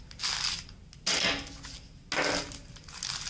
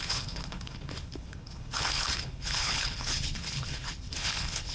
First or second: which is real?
first